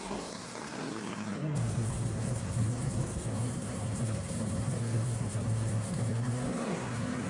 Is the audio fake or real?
fake